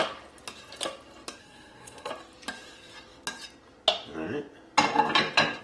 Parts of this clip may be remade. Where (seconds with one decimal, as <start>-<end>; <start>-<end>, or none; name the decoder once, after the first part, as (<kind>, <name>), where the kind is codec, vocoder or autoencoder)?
1.4-2.1 (codec, SNAC)